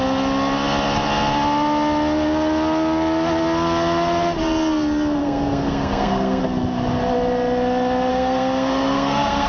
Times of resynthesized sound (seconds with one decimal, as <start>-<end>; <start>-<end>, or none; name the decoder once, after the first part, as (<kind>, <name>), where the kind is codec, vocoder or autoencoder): 5.2-6.4 (codec, SNAC); 8.1-9.5